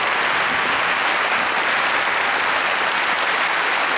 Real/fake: real